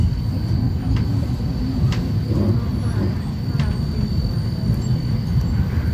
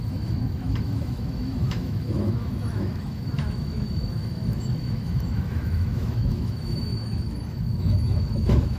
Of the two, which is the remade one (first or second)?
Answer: second